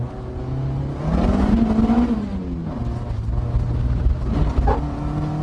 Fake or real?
real